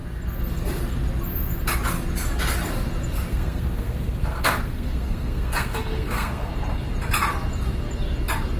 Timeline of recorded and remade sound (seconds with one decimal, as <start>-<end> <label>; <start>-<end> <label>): 0.0-3.3 recorded; 3.3-6.5 remade; 6.5-8.6 recorded